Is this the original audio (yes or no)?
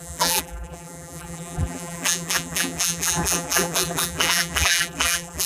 no